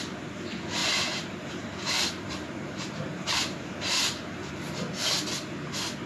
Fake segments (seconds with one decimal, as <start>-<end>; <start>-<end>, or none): 0.8-4.5